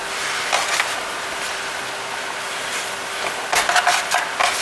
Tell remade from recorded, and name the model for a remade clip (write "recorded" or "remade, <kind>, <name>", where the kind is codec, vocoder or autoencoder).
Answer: recorded